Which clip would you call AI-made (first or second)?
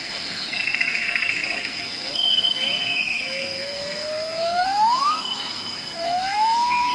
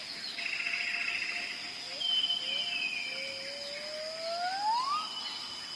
first